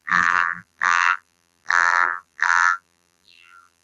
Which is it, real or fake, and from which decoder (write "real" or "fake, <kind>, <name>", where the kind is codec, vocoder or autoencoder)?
fake, vocoder, BigVGAN v2